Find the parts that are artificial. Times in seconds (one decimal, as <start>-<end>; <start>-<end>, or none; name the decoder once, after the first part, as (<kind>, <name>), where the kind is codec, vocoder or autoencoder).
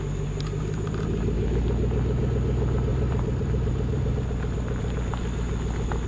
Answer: 2.9-4.1 (vocoder, BigVGAN v2)